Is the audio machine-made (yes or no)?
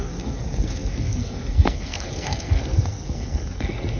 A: yes